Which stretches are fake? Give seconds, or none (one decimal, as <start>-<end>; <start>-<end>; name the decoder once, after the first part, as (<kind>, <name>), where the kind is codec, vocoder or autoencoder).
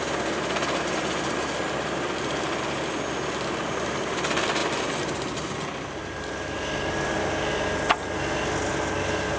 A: none